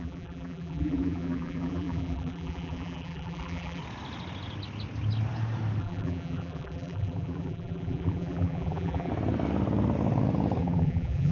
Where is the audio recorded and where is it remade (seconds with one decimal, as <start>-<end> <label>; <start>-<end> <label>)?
0.0-3.8 remade; 3.8-5.8 recorded; 5.8-9.1 remade; 9.1-10.6 recorded; 10.6-11.3 remade